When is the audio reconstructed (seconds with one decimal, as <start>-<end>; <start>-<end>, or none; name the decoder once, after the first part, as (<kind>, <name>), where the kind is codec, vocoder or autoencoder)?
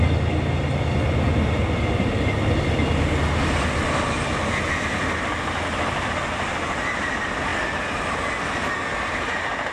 none